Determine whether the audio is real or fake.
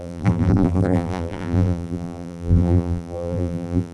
fake